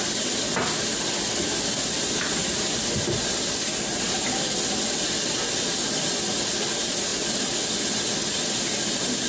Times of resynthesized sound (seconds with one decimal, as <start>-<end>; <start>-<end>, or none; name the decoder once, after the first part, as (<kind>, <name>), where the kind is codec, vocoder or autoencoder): none